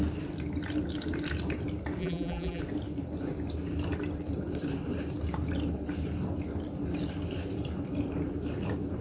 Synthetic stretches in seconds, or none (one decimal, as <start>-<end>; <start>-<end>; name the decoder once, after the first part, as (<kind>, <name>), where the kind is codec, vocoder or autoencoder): 2.0-2.6 (vocoder, BigVGAN v2)